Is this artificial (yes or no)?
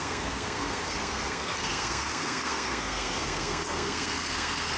yes